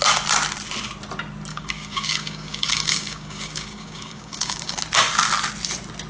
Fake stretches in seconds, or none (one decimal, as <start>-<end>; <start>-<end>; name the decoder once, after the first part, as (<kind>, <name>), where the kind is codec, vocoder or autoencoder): 1.5-4.8 (codec, DAC)